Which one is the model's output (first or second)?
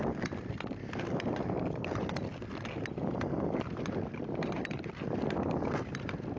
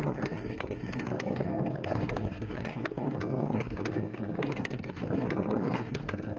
second